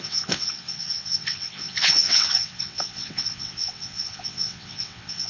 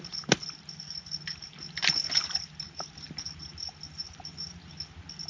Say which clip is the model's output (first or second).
first